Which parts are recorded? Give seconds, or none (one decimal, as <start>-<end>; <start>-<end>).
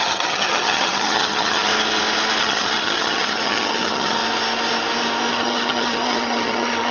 1.7-2.4; 4.2-5.3